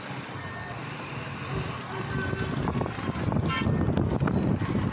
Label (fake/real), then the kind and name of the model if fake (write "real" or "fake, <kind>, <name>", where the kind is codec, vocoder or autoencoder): real